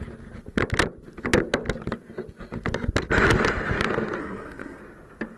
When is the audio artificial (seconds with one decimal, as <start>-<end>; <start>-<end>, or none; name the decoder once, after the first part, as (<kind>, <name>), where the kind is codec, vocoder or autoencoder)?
4.2-4.8 (codec, SNAC)